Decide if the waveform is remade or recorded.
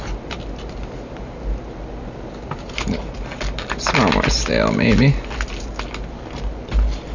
recorded